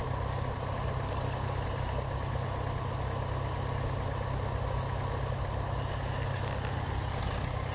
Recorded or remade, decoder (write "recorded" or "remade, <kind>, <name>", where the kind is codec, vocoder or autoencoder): recorded